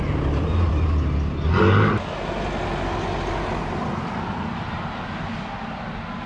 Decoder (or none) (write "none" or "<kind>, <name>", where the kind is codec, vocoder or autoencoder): none